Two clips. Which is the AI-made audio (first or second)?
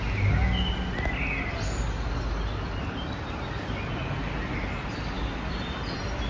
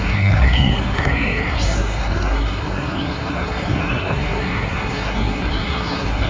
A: second